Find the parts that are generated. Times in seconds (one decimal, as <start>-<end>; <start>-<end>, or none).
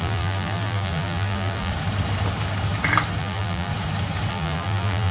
0.0-1.7; 3.2-3.7; 4.3-5.1